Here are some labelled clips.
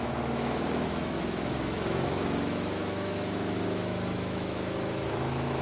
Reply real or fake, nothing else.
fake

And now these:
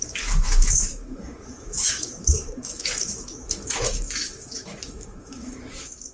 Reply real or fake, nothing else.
fake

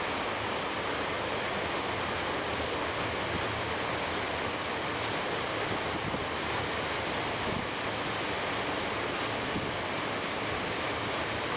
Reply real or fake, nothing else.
real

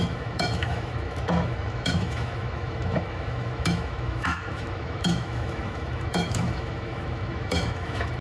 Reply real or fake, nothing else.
fake